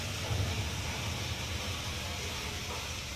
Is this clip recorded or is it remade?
recorded